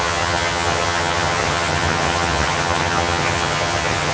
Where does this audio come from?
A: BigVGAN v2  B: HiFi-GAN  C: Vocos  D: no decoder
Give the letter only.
B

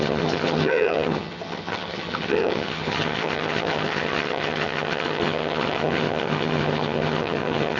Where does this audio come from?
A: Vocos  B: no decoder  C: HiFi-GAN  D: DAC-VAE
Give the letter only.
C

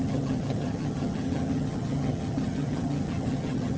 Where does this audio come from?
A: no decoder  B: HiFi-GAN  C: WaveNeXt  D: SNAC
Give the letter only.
B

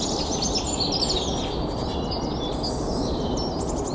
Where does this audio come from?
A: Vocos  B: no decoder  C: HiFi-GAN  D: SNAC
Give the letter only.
B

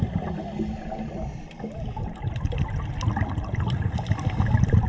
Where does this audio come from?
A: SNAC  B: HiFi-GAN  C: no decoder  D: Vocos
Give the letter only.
C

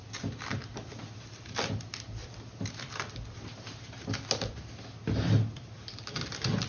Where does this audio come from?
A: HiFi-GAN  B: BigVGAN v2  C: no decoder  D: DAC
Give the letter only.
C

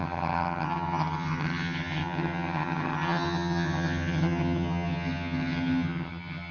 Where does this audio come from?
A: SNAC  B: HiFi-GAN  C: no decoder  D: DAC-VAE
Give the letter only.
B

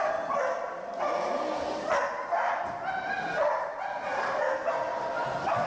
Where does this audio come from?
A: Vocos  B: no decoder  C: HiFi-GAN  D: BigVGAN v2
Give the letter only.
B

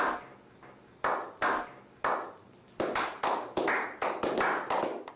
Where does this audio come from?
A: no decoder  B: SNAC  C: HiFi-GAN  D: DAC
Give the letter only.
A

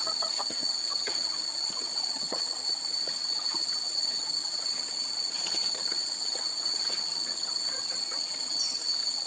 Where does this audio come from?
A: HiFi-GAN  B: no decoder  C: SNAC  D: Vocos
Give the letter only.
A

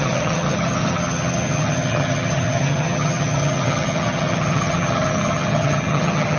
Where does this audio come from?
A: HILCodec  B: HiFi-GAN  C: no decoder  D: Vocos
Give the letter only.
B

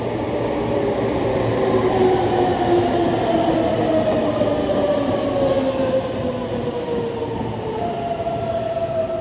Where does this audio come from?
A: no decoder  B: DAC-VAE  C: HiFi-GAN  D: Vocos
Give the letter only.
A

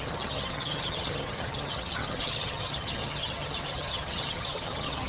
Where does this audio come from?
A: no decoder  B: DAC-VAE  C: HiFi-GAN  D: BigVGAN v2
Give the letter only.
C